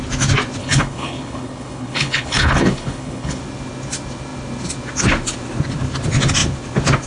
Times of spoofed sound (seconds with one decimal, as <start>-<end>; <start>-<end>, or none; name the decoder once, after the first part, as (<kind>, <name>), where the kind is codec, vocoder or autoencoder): 0.6-3.4 (codec, HILCodec)